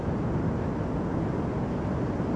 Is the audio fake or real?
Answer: real